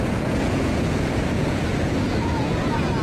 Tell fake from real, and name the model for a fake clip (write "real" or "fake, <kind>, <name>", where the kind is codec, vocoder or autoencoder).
fake, vocoder, Vocos